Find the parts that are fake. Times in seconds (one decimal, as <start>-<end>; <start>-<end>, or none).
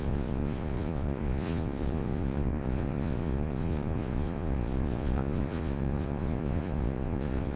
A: 0.0-7.6